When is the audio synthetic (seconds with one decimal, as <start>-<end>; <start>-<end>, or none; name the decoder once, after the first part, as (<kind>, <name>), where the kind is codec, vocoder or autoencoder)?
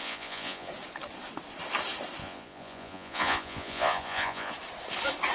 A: 0.0-0.7 (vocoder, Vocos); 2.2-4.5